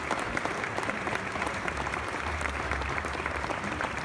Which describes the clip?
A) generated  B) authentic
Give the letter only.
A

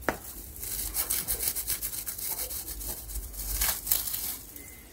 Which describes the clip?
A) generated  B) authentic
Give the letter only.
B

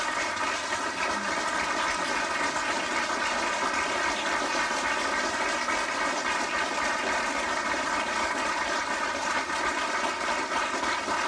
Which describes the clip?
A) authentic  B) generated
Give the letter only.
A